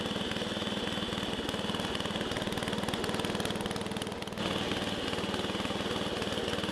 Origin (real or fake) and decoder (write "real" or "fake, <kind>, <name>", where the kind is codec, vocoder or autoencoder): real